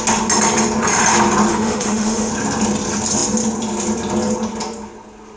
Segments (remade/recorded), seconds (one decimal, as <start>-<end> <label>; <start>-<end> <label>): 0.0-1.5 recorded; 1.5-2.3 remade; 2.3-5.4 recorded